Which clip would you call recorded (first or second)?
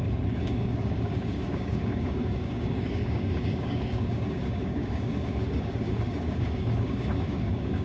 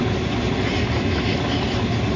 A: second